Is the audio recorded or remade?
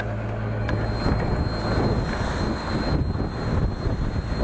recorded